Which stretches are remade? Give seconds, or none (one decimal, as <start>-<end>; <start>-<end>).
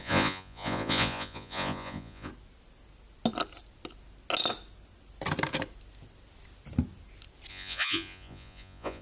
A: 0.0-2.3; 7.5-9.0